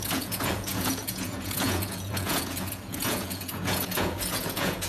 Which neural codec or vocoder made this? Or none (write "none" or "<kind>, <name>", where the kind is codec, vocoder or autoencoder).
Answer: vocoder, Vocos